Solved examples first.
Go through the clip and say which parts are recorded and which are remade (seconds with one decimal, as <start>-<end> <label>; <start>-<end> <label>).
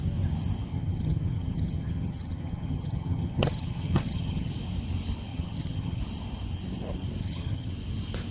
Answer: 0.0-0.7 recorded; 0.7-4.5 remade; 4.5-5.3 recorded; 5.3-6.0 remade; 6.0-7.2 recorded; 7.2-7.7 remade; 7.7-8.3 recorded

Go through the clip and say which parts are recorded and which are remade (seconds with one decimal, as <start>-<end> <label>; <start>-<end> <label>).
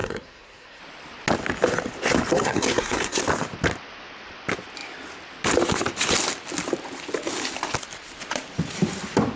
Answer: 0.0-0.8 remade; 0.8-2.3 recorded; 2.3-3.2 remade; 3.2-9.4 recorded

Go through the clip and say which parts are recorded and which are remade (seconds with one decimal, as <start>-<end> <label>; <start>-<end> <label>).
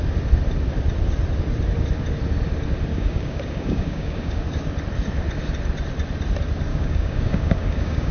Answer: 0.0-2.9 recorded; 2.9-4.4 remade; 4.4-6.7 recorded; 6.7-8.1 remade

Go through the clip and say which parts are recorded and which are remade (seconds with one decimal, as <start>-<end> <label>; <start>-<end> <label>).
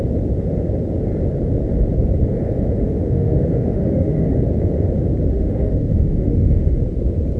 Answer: 0.0-2.8 recorded; 2.8-4.4 remade; 4.4-5.3 recorded; 5.3-6.8 remade; 6.8-7.4 recorded